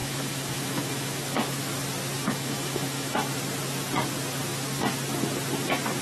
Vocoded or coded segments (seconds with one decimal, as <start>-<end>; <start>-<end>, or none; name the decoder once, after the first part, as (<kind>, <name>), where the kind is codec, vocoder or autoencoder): 0.0-1.2 (autoencoder, DAC-VAE); 2.2-3.3